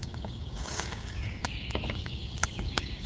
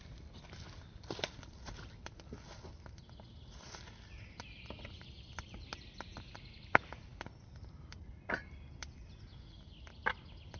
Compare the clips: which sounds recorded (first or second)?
second